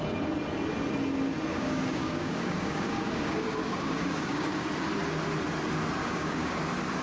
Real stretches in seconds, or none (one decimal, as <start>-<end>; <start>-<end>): 0.0-1.5; 4.7-6.0; 6.6-7.0